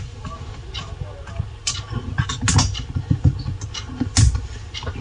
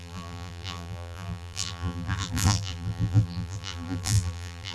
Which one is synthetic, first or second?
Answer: second